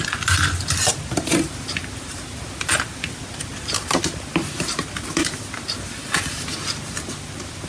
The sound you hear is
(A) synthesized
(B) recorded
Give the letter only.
B